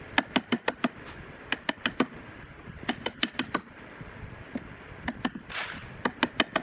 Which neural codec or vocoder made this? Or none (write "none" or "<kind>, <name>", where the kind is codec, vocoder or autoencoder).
none